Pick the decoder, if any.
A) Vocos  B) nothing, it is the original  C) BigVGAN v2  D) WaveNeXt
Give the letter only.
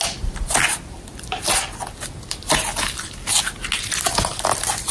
B